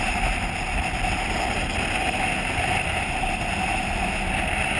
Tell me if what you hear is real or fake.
real